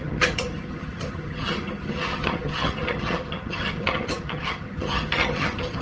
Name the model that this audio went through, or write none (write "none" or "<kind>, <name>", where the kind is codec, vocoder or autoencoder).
vocoder, HiFi-GAN